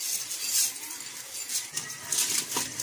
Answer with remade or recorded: recorded